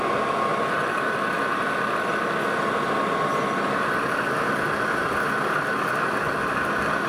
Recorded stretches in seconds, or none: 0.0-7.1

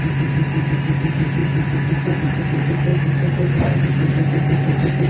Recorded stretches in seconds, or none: 0.0-5.1